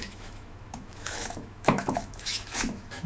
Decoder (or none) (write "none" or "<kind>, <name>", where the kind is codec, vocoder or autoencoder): autoencoder, DAC-VAE